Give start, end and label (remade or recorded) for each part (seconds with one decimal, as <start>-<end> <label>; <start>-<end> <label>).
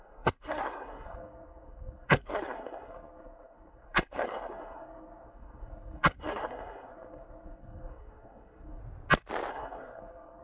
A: 0.0-8.8 remade; 8.8-9.5 recorded; 9.5-10.4 remade